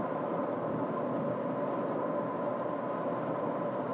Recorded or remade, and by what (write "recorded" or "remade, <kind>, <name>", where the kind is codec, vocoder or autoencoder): recorded